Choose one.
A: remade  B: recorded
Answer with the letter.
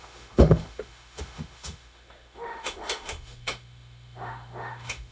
A